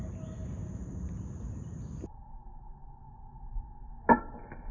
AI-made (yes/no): no